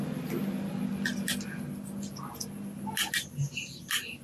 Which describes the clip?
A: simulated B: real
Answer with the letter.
B